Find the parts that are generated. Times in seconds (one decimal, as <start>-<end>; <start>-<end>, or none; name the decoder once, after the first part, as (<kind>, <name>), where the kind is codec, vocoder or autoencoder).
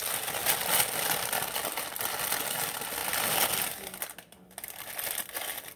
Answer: none